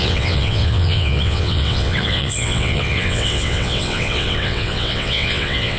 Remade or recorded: remade